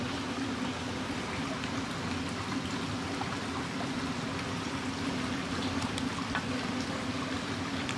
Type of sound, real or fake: real